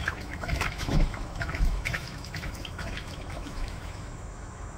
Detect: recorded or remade remade